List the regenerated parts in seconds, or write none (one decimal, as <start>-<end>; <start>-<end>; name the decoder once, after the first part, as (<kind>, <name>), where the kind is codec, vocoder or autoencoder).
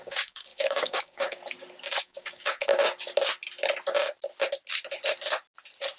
0.0-1.4 (codec, DAC); 2.0-2.7